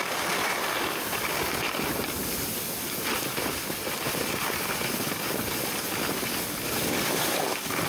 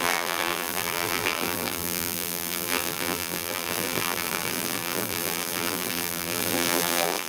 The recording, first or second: first